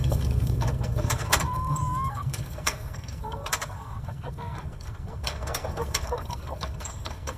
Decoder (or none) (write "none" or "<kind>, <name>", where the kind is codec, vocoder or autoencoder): codec, SNAC